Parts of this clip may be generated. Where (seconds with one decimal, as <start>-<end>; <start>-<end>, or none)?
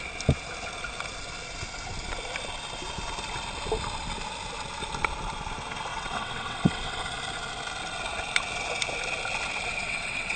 5.9-7.0; 9.7-10.4